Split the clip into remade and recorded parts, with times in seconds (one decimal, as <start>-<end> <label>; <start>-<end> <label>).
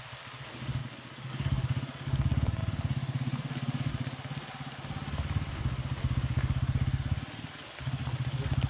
0.0-8.7 recorded